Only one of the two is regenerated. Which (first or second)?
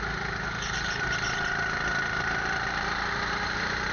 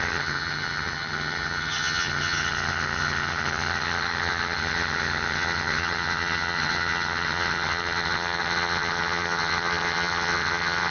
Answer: second